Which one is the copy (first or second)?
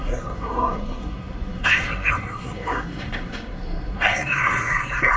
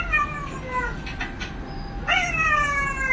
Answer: first